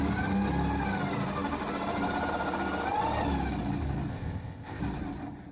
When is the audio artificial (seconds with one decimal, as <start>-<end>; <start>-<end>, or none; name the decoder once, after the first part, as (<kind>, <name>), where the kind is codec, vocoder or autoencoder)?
4.1-4.8 (codec, ZipCodec)